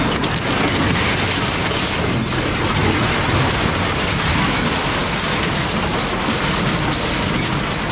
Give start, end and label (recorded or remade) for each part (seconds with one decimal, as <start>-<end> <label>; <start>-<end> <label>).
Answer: 0.0-7.9 recorded